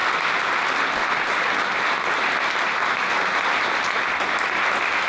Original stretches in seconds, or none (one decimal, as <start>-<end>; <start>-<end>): 0.0-5.1